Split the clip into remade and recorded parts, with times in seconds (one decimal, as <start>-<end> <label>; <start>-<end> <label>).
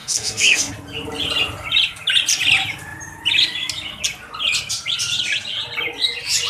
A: 0.0-0.7 remade; 0.7-6.5 recorded